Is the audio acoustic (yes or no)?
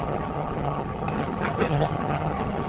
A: no